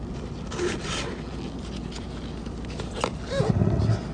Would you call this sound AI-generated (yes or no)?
no